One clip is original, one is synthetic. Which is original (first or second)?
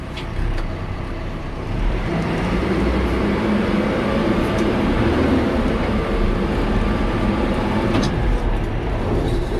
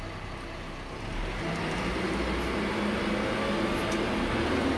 second